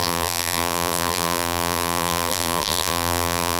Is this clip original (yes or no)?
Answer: no